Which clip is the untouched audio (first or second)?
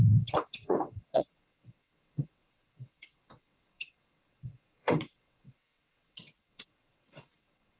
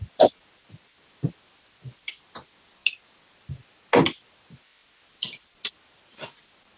second